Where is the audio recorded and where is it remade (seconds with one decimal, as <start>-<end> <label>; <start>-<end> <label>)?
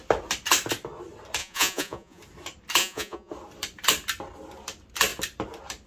0.0-1.4 recorded; 1.4-2.2 remade; 2.2-2.8 recorded; 2.8-3.3 remade; 3.3-5.9 recorded